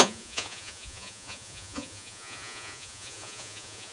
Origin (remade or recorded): remade